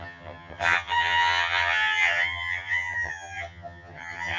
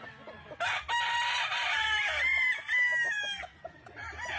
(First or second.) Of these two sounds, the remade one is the first